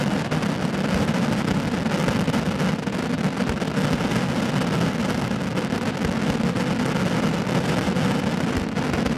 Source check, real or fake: real